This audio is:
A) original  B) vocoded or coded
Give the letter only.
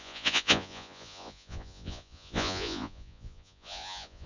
B